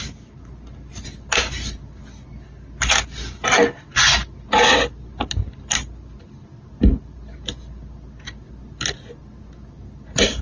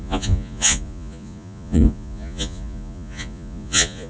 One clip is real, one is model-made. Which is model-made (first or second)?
second